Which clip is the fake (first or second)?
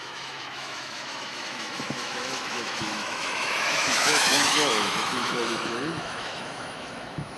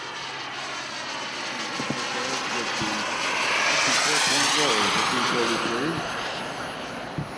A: first